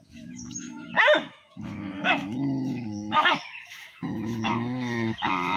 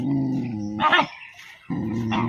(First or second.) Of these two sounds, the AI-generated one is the first